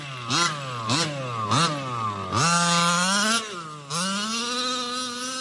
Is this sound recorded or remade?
recorded